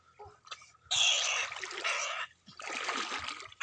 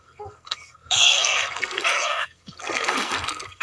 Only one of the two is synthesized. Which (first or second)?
second